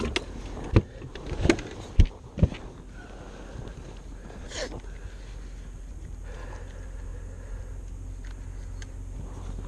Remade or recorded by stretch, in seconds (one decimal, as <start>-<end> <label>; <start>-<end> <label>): 0.0-9.7 recorded